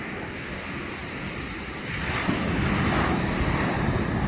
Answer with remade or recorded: recorded